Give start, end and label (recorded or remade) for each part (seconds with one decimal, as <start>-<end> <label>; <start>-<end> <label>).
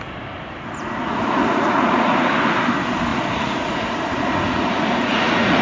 0.0-1.0 recorded; 1.0-2.1 remade; 2.1-3.1 recorded; 3.1-5.6 remade